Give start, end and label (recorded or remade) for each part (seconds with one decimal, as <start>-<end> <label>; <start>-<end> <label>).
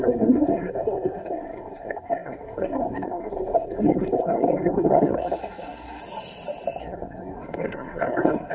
0.0-6.0 remade; 6.0-6.8 recorded; 6.8-8.5 remade